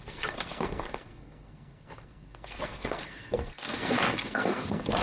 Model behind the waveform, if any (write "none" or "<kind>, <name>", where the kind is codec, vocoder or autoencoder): codec, SNAC